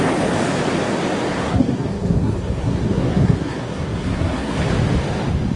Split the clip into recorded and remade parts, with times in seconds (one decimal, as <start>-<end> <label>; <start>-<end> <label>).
0.0-1.3 recorded; 1.3-4.7 remade; 4.7-5.6 recorded